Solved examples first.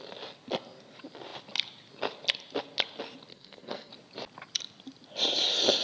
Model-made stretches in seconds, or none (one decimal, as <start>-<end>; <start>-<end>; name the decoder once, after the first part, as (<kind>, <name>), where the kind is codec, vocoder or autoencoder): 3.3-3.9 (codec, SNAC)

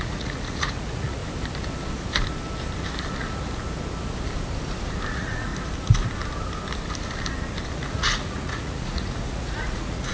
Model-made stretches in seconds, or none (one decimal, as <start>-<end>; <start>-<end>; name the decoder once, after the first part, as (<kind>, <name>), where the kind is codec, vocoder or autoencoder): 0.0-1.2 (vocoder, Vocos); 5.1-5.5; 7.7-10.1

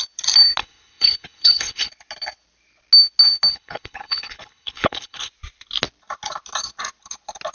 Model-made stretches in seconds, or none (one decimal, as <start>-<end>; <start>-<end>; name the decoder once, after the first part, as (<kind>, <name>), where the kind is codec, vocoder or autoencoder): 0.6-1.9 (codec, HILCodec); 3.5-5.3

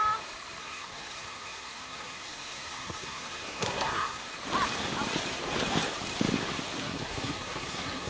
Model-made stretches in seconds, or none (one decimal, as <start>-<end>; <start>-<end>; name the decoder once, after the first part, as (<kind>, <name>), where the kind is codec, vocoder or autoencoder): 0.6-4.3 (codec, SNAC); 6.8-8.1